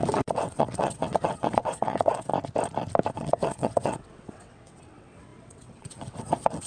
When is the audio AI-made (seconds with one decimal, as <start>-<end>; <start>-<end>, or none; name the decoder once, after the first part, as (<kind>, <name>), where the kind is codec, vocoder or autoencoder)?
0.0-2.3 (vocoder, WaveNeXt); 3.1-6.7